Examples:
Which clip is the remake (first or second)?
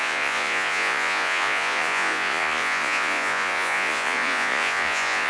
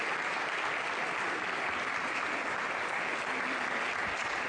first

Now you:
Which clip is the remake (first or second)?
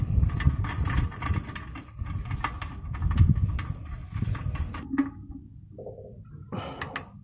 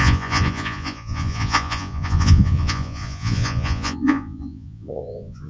second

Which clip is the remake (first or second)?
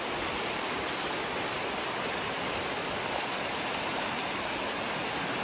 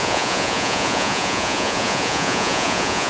second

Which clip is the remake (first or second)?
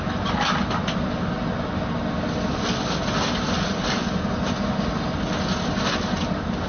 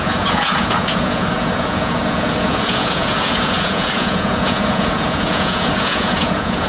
second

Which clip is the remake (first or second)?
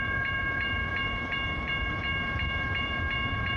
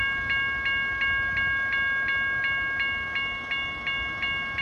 first